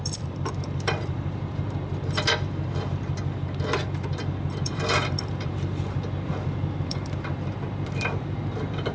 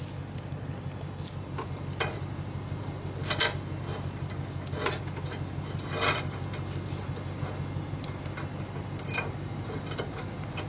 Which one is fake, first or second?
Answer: first